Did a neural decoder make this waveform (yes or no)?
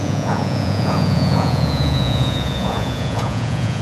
yes